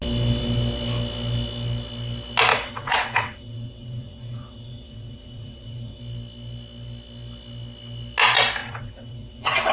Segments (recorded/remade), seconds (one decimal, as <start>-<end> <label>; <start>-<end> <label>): 0.0-2.5 recorded; 2.5-6.0 remade; 6.0-8.6 recorded; 8.6-9.7 remade

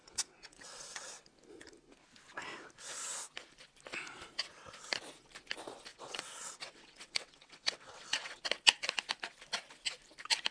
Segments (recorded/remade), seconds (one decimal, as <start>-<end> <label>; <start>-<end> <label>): 0.0-1.1 remade; 1.1-5.9 recorded; 5.9-8.4 remade; 8.4-10.5 recorded

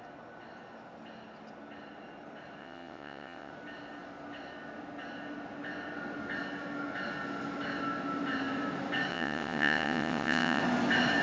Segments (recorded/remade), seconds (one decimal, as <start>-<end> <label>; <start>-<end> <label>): 0.0-2.6 recorded; 2.6-3.5 remade; 3.5-9.1 recorded; 9.1-10.6 remade; 10.6-11.2 recorded